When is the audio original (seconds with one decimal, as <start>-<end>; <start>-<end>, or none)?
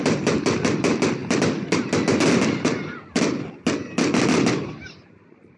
0.0-5.6